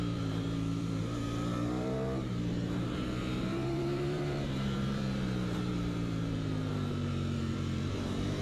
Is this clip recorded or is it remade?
remade